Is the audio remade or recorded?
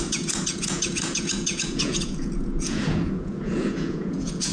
remade